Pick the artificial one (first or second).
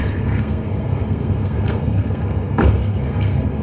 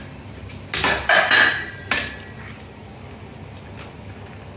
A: first